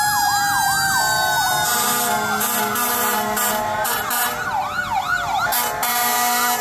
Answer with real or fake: real